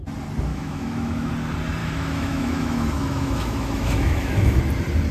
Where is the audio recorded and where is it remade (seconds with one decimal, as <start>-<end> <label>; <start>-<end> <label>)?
0.0-0.5 recorded; 0.5-1.3 remade; 1.3-1.8 recorded; 1.8-4.6 remade; 4.6-5.1 recorded